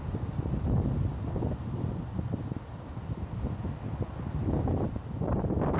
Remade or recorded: recorded